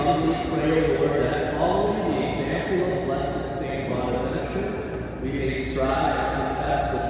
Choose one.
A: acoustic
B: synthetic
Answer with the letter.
A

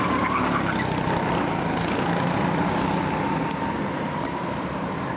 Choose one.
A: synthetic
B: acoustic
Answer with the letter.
B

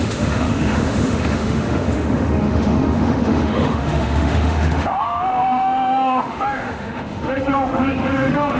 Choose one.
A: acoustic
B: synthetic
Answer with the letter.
B